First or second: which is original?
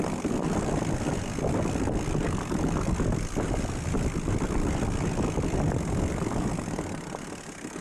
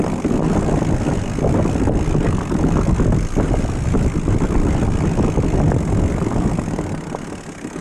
second